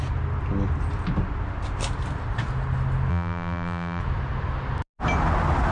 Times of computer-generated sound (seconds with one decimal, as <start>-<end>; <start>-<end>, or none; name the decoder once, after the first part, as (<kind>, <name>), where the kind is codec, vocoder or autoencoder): 3.1-4.0 (vocoder, BigVGAN v2)